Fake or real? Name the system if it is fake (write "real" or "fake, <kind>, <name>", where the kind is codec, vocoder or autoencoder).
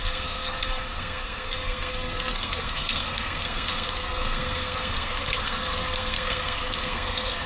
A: fake, codec, SNAC